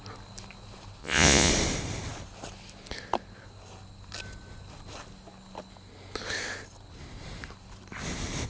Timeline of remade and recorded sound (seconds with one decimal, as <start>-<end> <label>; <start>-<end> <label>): 0.0-1.0 recorded; 1.0-1.5 remade; 1.5-8.5 recorded